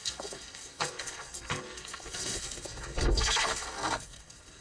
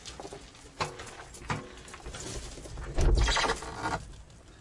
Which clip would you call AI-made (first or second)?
first